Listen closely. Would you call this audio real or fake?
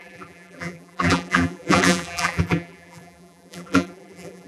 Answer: fake